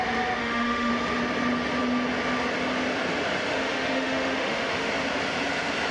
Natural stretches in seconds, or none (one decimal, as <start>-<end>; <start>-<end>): 0.0-0.4; 0.9-3.5; 4.9-5.9